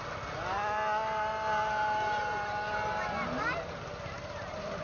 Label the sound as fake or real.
real